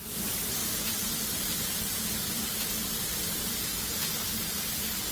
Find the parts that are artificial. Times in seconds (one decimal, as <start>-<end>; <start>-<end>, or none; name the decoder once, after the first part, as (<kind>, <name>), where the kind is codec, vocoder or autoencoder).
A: 0.6-3.7 (vocoder, BigVGAN v2)